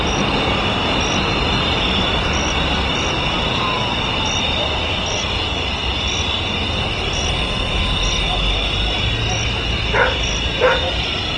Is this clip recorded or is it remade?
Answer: recorded